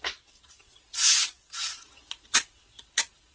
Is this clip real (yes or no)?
no